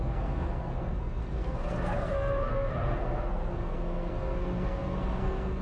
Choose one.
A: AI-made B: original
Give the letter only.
A